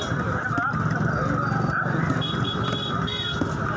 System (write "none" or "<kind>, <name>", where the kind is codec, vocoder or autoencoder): none